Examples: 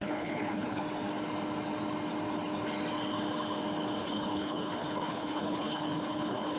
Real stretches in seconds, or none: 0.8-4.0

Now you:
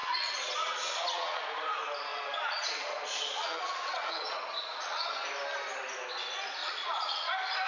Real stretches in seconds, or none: 1.4-2.1; 5.1-6.6; 7.3-7.7

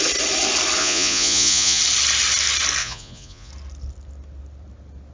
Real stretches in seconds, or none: 0.0-0.8; 1.8-2.8; 3.5-5.1

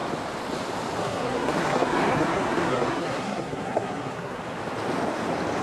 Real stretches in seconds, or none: 0.0-1.0; 4.4-5.6